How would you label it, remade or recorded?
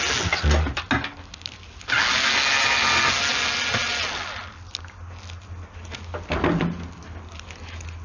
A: recorded